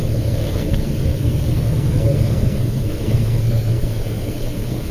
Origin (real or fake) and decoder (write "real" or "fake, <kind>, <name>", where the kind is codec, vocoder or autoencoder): fake, codec, SNAC